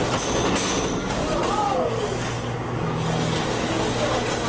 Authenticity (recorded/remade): recorded